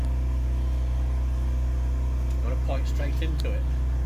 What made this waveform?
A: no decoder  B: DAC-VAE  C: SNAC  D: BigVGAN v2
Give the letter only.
A